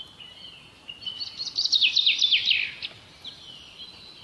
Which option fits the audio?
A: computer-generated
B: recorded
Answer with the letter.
B